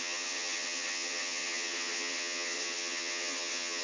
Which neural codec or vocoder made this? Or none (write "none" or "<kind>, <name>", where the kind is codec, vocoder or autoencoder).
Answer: vocoder, HiFi-GAN